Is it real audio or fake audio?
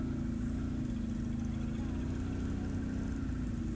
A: real